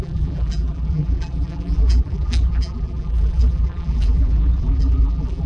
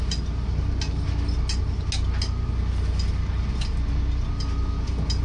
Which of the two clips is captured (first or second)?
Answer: second